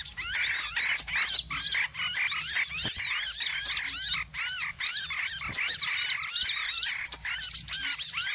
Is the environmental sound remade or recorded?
recorded